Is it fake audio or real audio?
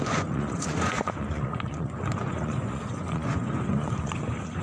fake